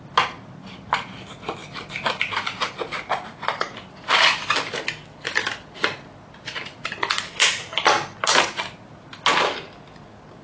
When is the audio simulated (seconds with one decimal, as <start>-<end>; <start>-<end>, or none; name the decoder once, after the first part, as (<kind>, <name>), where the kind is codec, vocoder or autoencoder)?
none